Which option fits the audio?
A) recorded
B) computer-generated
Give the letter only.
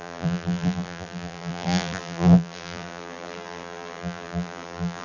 B